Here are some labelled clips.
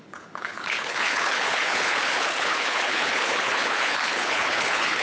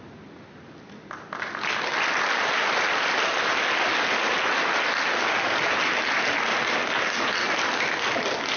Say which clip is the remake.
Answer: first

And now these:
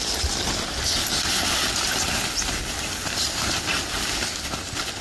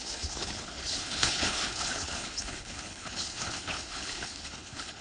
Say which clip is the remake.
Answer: second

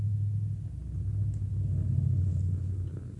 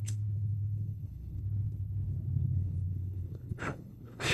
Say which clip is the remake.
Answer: second